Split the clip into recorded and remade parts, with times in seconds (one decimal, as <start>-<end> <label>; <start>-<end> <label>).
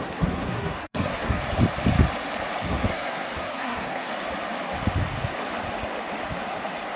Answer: 0.0-1.4 remade; 1.4-2.6 recorded; 2.6-4.1 remade; 4.1-7.0 recorded